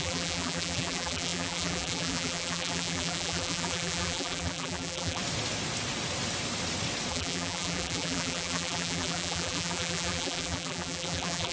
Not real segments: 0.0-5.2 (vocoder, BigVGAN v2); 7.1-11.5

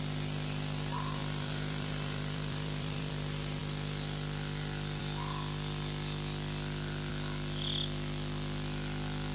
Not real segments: 1.2-3.1 (vocoder, BigVGAN v2)

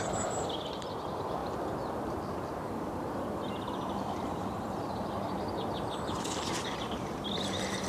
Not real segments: 0.0-1.4 (vocoder, BigVGAN v2); 3.0-7.9

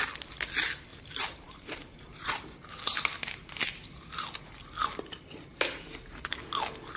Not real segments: 0.9-2.7 (vocoder, BigVGAN v2); 5.5-6.2

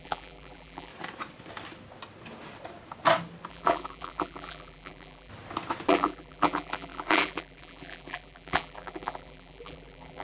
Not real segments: 0.0-0.9 (vocoder, BigVGAN v2); 3.5-5.3; 5.9-10.2

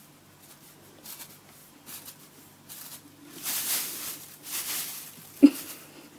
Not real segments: 1.6-5.3 (vocoder, BigVGAN v2)

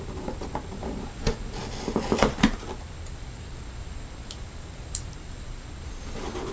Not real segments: none